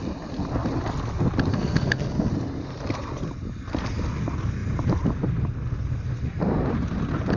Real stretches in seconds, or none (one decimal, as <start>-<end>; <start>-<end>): 0.0-1.5; 2.3-7.4